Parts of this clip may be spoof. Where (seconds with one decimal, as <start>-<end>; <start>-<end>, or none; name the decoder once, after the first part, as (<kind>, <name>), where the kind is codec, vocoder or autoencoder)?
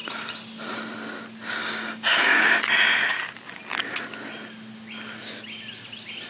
1.6-2.4 (codec, DAC)